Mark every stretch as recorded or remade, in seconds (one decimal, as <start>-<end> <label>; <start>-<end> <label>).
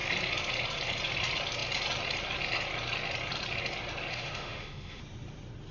0.0-4.1 recorded; 4.1-5.0 remade; 5.0-5.7 recorded